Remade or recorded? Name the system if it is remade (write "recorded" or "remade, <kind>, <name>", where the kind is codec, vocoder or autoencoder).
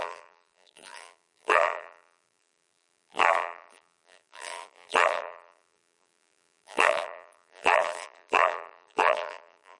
remade, vocoder, BigVGAN v2